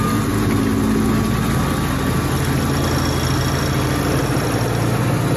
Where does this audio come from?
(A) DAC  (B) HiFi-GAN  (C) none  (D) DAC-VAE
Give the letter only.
C